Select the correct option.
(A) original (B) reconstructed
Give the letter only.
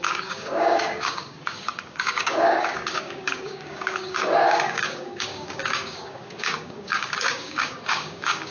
B